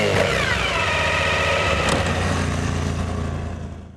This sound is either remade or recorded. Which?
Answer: recorded